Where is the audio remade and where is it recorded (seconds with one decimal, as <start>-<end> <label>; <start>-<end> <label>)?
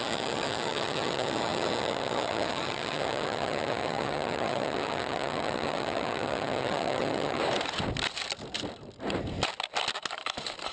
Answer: 0.0-7.4 remade; 7.4-10.7 recorded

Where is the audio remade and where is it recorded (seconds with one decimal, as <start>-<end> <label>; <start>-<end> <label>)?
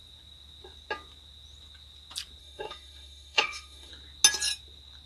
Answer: 0.0-2.4 recorded; 2.4-3.9 remade; 3.9-5.1 recorded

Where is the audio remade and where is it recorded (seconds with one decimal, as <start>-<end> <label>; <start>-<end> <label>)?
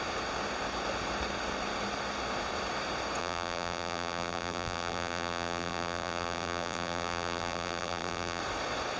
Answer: 0.0-3.2 recorded; 3.2-8.4 remade; 8.4-9.0 recorded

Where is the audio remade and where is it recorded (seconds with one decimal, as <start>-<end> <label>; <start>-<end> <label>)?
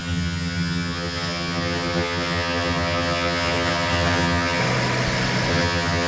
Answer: 0.0-4.6 remade; 4.6-5.5 recorded; 5.5-6.1 remade